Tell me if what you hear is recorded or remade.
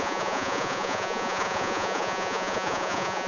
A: remade